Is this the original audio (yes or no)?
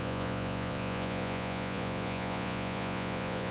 no